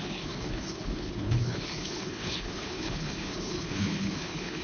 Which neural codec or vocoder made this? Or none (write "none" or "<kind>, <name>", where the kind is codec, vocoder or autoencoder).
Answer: codec, HILCodec